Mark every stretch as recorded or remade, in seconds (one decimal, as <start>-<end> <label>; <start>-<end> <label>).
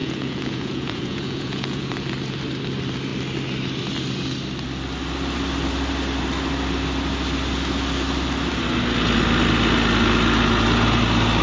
0.0-1.9 remade; 1.9-11.4 recorded